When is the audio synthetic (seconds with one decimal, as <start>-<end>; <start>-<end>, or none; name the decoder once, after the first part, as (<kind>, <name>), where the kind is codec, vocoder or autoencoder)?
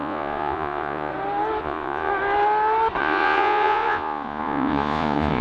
0.0-1.1 (vocoder, Vocos); 1.6-2.1; 3.0-5.4